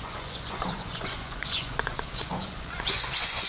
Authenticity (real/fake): fake